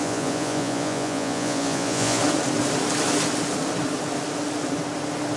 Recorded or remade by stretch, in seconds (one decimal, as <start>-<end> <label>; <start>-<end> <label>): 0.0-2.2 remade; 2.2-5.4 recorded